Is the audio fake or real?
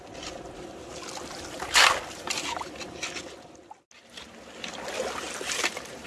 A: real